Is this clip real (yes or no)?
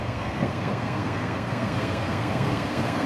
no